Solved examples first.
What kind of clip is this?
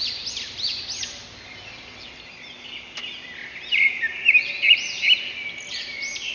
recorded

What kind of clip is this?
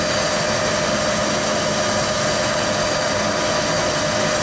recorded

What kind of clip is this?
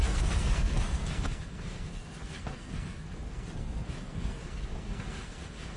remade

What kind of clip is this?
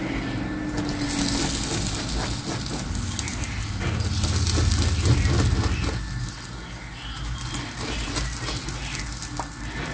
recorded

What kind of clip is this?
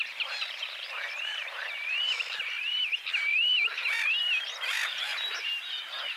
remade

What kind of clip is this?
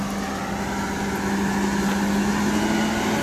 recorded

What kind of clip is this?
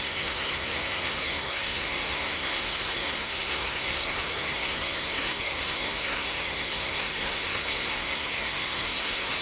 remade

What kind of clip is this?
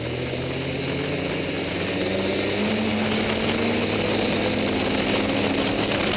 recorded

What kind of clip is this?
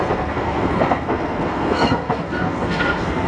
remade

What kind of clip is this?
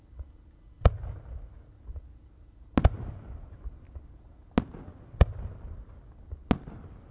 recorded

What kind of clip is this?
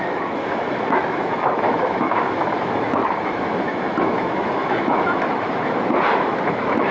remade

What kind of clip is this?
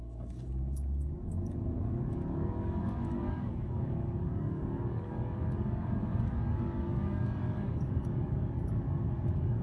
remade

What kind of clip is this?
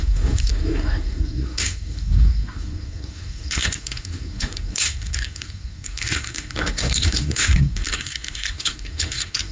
remade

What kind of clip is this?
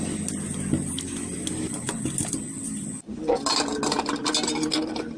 recorded